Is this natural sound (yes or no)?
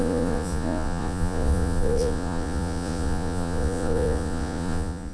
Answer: no